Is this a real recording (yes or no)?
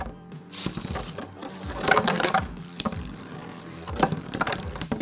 no